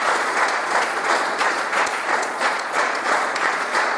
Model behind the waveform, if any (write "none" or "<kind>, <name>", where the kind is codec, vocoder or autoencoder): vocoder, Vocos